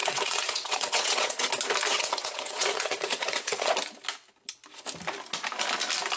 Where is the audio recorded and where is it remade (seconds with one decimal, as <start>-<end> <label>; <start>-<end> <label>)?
0.0-1.5 remade; 1.5-1.9 recorded; 1.9-3.7 remade; 3.7-6.2 recorded